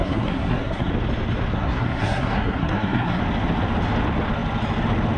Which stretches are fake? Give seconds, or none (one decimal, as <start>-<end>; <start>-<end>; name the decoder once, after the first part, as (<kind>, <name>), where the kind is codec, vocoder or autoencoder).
0.0-0.9 (codec, SNAC); 1.5-3.2